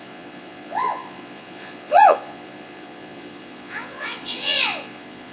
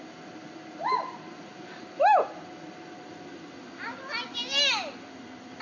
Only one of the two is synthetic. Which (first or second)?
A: first